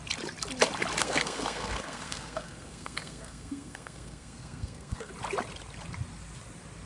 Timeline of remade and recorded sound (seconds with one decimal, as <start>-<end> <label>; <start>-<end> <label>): 0.0-1.0 recorded; 1.0-5.1 remade; 5.1-6.9 recorded